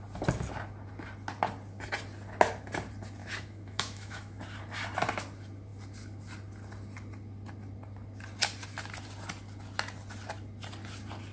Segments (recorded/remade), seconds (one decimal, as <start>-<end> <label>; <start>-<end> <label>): 0.0-3.2 recorded; 3.2-4.4 remade; 4.4-11.3 recorded